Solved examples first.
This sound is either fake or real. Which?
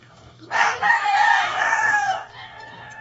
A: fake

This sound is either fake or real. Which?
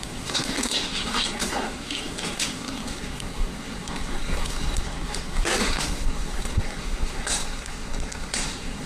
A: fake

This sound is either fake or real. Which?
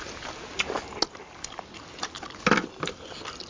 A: real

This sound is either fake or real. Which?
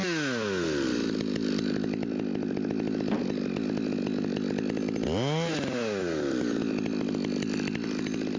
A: real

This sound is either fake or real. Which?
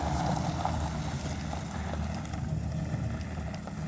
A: real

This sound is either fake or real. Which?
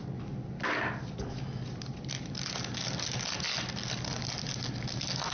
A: real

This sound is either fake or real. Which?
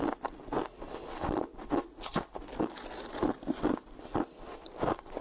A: real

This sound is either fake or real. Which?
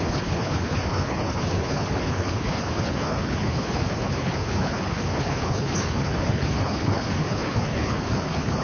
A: fake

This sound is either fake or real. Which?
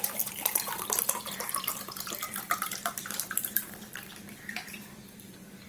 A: fake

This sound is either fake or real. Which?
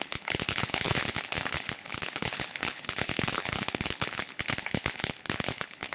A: fake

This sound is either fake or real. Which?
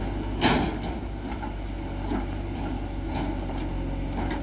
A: real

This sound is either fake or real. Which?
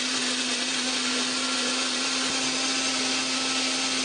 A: real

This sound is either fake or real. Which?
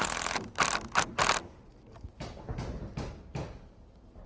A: real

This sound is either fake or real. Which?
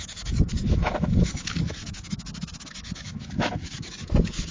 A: fake